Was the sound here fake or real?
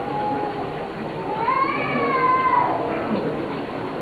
real